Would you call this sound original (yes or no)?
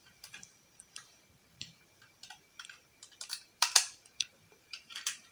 no